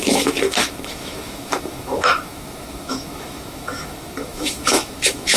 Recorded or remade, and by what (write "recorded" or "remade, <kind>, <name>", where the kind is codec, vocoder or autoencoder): remade, autoencoder, DAC-VAE